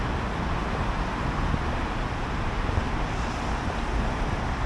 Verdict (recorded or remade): recorded